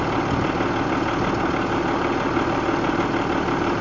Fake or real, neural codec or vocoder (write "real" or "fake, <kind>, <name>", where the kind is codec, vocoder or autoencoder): real